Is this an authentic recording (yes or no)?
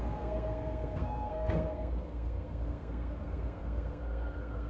no